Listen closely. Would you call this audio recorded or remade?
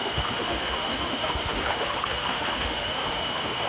remade